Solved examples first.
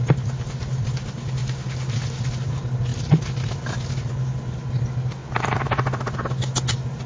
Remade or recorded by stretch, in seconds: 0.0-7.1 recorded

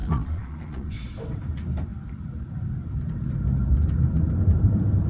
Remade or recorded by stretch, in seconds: 0.0-0.9 remade; 0.9-5.1 recorded

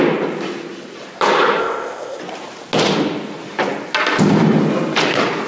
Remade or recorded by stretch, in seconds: 0.0-1.6 recorded; 1.6-2.2 remade; 2.2-5.5 recorded

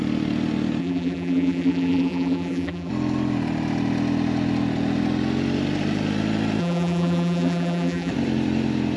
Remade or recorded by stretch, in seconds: 0.0-0.8 recorded; 0.8-2.9 remade; 2.9-6.6 recorded; 6.6-8.1 remade; 8.1-9.0 recorded

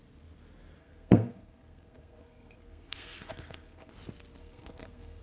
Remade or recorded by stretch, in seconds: 0.0-0.8 recorded; 0.8-3.9 remade; 3.9-4.4 recorded; 4.4-5.2 remade